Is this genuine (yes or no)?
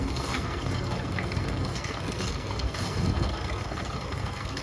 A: no